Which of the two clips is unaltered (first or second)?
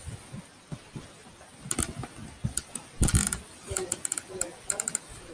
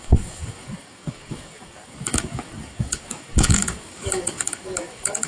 first